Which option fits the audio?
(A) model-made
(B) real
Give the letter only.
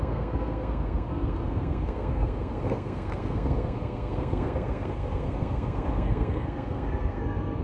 A